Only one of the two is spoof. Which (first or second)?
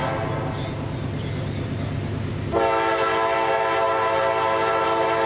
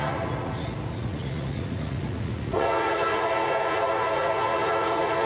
second